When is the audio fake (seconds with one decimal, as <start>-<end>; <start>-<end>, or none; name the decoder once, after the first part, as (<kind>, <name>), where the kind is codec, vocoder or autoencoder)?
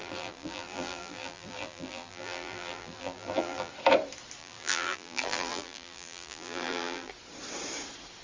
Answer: 0.0-3.7 (vocoder, BigVGAN v2); 4.4-7.1